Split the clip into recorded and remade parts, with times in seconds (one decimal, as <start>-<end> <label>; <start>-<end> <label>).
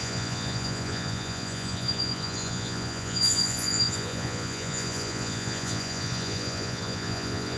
0.0-7.6 remade